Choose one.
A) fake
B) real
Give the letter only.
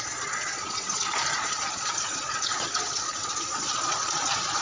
A